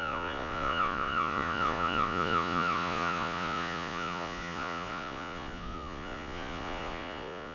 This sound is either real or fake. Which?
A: fake